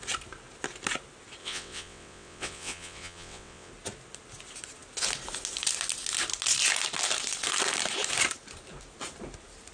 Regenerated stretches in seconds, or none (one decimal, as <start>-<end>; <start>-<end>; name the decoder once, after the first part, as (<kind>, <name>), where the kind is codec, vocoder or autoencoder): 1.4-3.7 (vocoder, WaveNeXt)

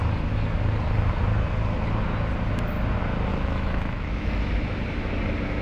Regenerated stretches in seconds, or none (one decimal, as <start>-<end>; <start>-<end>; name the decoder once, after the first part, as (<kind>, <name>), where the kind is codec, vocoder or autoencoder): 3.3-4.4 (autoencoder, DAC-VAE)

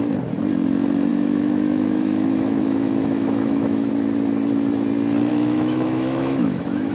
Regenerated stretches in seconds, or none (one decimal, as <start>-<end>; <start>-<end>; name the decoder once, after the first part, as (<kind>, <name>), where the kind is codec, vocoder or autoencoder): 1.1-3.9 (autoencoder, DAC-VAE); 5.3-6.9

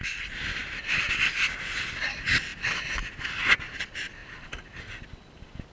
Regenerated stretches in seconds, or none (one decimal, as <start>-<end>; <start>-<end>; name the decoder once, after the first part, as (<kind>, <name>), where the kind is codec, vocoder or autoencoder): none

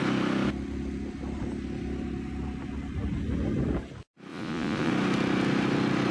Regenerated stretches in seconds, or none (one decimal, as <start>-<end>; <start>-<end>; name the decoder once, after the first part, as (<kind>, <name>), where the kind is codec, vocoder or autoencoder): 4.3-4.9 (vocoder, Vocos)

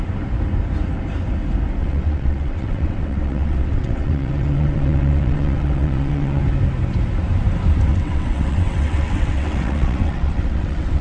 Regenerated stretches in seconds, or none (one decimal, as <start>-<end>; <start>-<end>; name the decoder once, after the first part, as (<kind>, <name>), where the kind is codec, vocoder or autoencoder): 1.8-6.4 (vocoder, WaveNeXt); 7.9-11.0

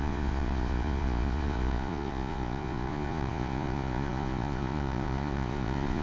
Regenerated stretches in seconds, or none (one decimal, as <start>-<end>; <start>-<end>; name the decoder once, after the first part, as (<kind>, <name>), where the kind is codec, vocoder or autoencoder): 0.0-6.0 (vocoder, Vocos)